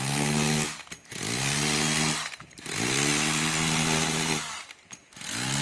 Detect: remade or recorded recorded